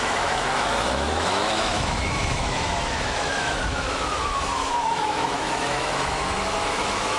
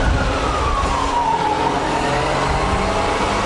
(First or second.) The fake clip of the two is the first